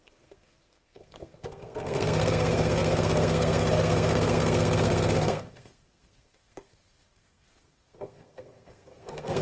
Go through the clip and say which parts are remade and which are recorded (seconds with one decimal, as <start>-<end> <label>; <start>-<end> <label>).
0.0-9.4 remade